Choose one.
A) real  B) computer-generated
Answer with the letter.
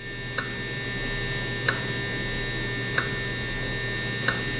A